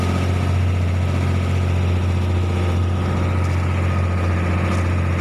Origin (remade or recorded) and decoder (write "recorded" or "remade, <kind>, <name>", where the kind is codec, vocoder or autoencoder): recorded